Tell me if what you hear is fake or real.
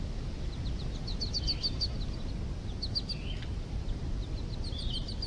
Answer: real